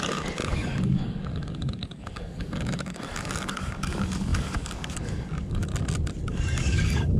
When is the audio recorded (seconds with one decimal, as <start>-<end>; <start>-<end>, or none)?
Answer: 5.7-6.3